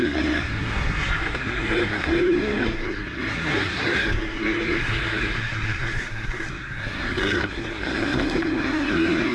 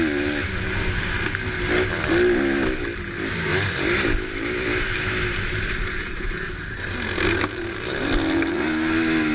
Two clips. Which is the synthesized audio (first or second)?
first